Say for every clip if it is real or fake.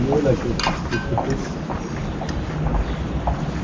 real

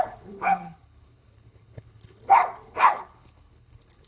fake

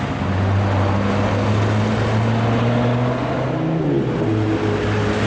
real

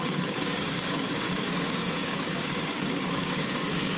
fake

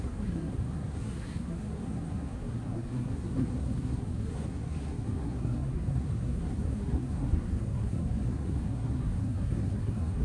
fake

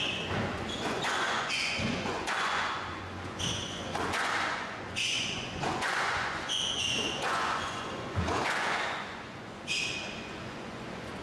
fake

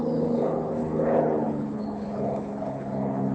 fake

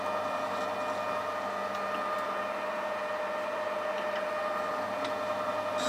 real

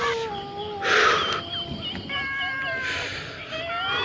real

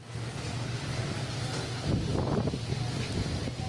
real